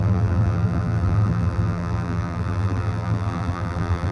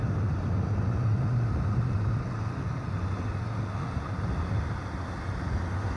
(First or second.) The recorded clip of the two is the second